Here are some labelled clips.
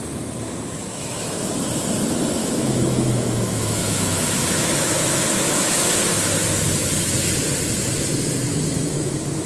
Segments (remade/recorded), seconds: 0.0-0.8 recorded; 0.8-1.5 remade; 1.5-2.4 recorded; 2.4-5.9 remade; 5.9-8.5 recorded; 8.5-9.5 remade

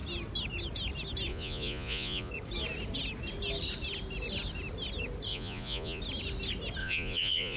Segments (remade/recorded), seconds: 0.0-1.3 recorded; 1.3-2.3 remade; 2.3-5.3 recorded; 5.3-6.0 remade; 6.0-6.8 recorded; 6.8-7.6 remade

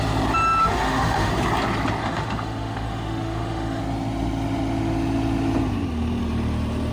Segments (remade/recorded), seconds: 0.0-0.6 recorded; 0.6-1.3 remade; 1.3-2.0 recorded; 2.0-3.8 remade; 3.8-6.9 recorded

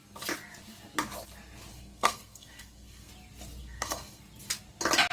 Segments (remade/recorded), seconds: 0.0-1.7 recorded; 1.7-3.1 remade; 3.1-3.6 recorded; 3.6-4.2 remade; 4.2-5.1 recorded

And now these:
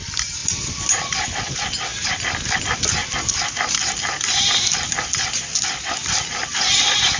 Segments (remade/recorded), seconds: 0.0-7.2 recorded

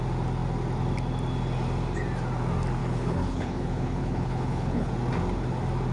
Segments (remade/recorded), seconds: 0.0-2.8 recorded; 2.8-4.9 remade; 4.9-5.9 recorded

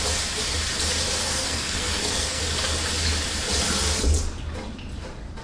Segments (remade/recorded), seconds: 0.0-1.2 recorded; 1.2-2.4 remade; 2.4-5.4 recorded